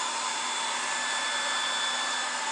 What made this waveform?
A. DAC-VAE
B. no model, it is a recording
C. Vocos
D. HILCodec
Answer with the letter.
B